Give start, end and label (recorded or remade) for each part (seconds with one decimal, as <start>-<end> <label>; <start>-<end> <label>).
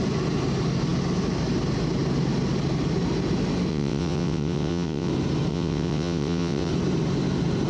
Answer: 0.0-3.7 recorded; 3.7-5.1 remade; 5.1-5.5 recorded; 5.5-6.7 remade; 6.7-7.7 recorded